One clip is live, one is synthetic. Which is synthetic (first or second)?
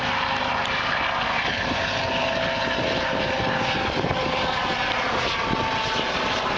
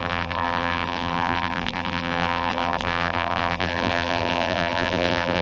second